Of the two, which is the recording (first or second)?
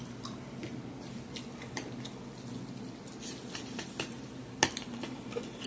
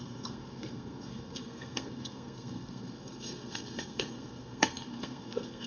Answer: first